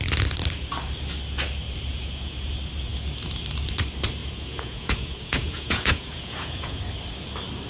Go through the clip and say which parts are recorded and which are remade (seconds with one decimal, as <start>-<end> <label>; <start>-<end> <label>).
0.0-1.9 recorded; 1.9-2.5 remade; 2.5-4.2 recorded; 4.2-6.8 remade; 6.8-7.7 recorded